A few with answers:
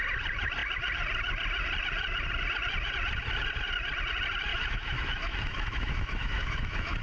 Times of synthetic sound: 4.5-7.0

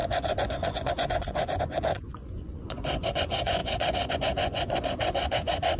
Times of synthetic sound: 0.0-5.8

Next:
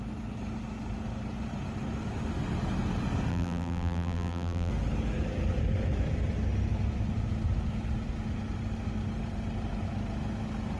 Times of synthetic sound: 3.3-4.7

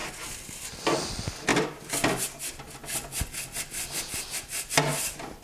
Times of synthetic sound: none

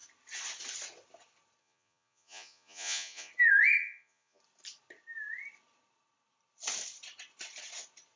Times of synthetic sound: 1.6-3.3; 3.8-4.4